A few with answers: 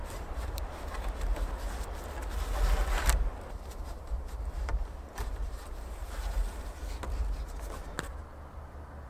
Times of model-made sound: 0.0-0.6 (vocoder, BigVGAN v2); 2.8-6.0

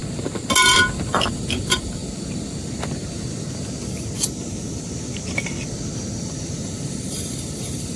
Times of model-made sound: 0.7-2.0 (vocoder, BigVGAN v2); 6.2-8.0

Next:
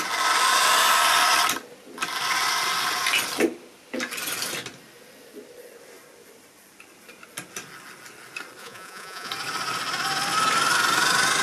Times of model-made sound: 8.6-9.3 (vocoder, Vocos)